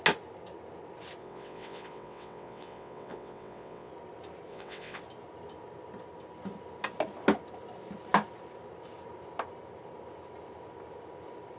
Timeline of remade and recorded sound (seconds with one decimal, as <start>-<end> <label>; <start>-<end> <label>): 0.0-1.2 recorded; 1.2-3.9 remade; 3.9-4.5 recorded; 4.5-5.0 remade; 5.0-11.6 recorded